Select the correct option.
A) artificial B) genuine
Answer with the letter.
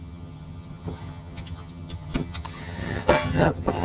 A